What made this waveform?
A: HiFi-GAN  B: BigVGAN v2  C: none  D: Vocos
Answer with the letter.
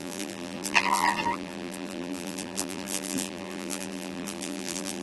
B